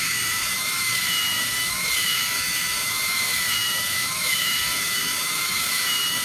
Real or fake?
fake